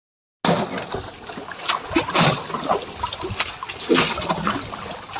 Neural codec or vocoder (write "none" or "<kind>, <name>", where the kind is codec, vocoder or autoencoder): none